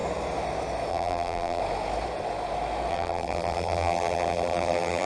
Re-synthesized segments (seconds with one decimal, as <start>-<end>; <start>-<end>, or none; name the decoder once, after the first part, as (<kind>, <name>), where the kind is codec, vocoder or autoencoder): 0.9-1.6 (vocoder, BigVGAN v2); 2.9-5.0